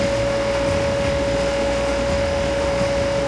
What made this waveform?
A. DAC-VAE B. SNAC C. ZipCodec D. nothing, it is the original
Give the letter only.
A